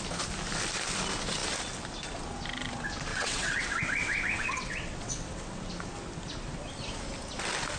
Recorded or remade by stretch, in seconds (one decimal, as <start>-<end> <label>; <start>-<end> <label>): 0.0-3.1 recorded; 3.1-5.7 remade; 5.7-7.8 recorded